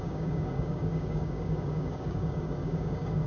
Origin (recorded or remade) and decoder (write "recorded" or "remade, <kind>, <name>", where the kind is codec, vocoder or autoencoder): remade, codec, DAC